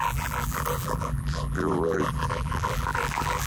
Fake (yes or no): yes